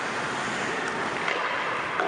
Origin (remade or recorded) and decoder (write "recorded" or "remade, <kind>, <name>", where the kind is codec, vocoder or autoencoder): recorded